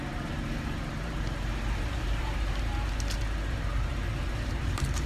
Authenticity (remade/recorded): remade